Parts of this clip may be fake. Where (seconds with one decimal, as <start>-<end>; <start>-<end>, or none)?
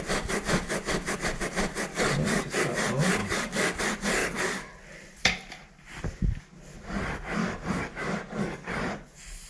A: 1.9-2.4; 3.2-3.8; 4.2-4.7; 7.4-8.7